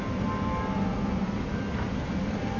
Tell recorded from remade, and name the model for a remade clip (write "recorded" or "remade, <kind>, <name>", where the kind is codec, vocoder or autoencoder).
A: recorded